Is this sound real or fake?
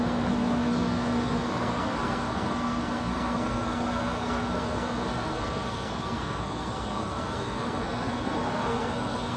fake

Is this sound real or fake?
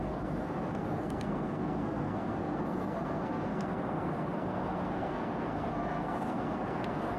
fake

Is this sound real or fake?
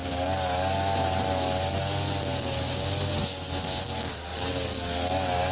real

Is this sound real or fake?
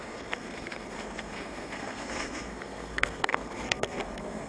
fake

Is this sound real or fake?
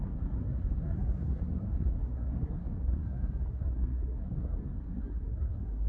fake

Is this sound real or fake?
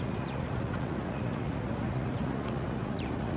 fake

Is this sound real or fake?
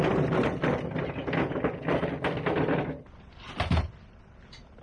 real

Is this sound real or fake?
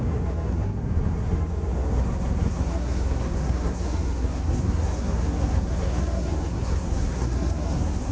fake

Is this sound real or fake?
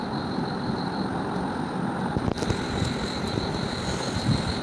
real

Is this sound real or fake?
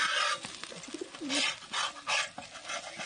real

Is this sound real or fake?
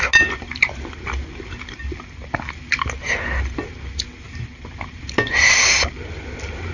real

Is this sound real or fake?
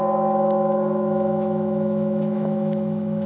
fake